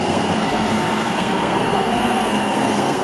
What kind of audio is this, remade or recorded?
remade